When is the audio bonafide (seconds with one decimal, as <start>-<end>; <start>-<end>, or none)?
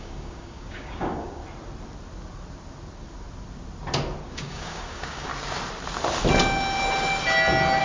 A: 1.4-4.2; 5.3-7.8